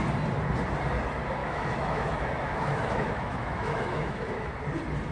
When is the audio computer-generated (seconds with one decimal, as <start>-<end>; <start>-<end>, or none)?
1.4-4.5